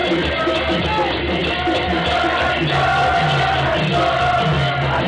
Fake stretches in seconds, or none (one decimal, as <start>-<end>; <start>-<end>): 1.4-3.7